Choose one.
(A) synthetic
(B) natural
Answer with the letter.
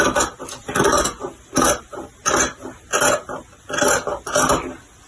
B